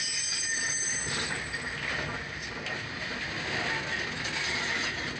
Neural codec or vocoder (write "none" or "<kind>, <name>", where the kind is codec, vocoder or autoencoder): none